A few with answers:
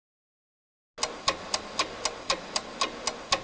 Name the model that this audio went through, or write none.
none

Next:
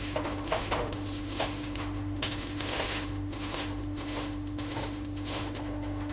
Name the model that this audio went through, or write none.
autoencoder, DAC-VAE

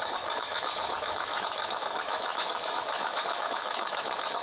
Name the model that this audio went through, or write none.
autoencoder, DAC-VAE